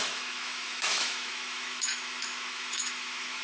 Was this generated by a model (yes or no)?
yes